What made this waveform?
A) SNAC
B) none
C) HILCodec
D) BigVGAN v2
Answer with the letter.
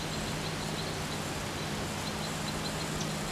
B